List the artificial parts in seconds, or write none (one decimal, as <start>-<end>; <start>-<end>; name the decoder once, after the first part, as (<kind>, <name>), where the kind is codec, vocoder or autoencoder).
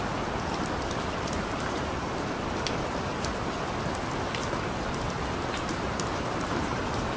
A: 0.0-3.1 (vocoder, BigVGAN v2); 5.6-7.2